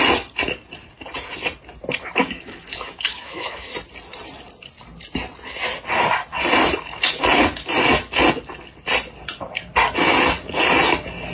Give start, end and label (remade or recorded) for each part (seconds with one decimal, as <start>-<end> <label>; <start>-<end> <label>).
0.0-2.2 recorded; 2.2-3.7 remade; 3.7-11.3 recorded